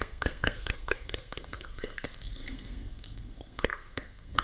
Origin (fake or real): fake